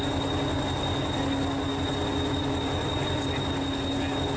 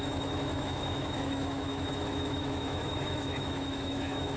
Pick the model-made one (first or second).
second